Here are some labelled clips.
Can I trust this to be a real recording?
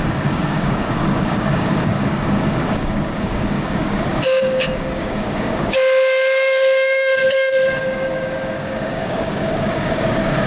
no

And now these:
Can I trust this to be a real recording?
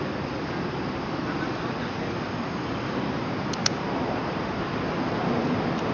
yes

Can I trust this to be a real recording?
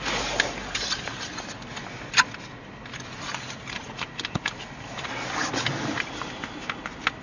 yes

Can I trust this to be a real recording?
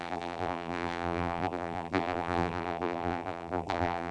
no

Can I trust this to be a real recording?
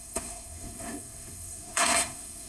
no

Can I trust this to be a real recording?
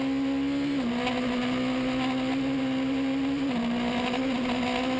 yes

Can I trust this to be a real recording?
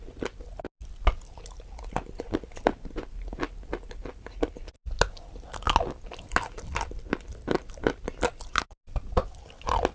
yes